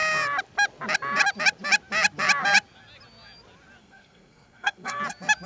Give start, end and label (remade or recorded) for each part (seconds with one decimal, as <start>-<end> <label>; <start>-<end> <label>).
0.0-3.8 recorded; 3.8-5.0 remade; 5.0-5.5 recorded